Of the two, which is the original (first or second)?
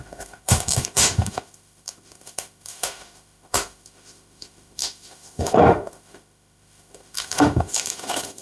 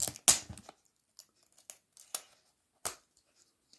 second